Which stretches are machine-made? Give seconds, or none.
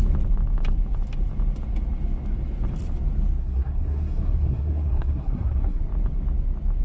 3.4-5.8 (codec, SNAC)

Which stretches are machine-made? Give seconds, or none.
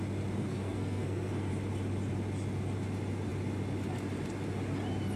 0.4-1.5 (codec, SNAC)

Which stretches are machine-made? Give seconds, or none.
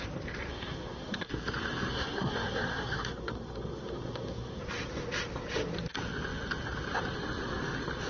0.5-1.3 (codec, SNAC); 1.9-4.6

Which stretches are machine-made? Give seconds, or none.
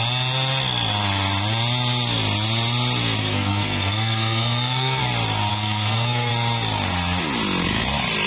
3.2-5.0 (codec, SNAC); 5.5-6.3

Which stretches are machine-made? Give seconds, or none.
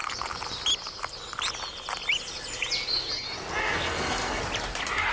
3.6-4.4 (codec, SNAC)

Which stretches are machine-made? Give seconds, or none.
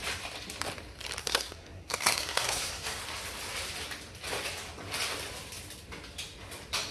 1.2-3.0 (codec, SNAC)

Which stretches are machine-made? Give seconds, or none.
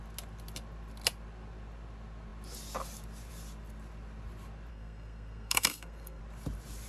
4.7-6.2 (codec, SNAC)